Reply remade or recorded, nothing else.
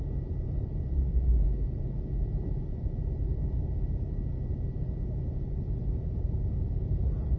remade